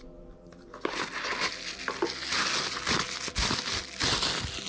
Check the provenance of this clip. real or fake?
real